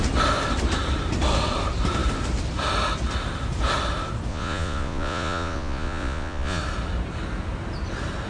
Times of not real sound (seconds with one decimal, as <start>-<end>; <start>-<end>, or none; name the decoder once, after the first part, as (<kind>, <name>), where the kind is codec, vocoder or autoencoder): 4.3-6.6 (vocoder, Vocos)